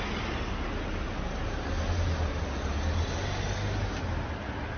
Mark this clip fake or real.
real